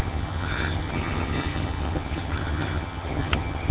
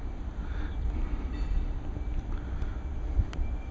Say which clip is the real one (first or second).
second